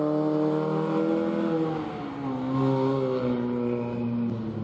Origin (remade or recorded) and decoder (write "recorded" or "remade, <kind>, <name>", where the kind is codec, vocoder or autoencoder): recorded